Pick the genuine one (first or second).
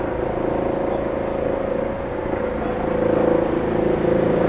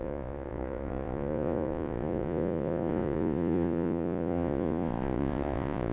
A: first